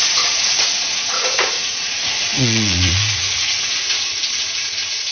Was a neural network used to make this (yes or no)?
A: yes